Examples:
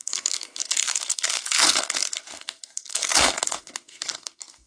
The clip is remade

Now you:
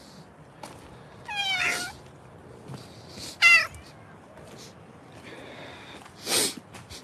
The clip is recorded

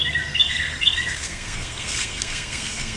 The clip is remade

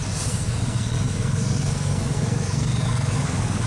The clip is remade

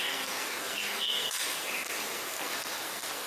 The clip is remade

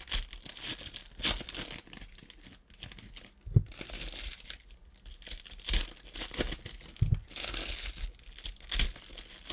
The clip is recorded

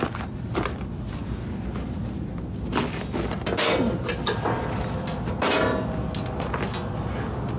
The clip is recorded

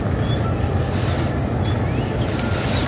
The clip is recorded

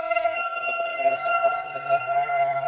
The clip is remade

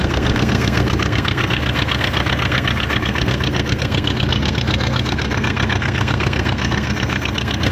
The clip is remade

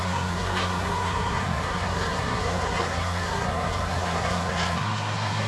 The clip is remade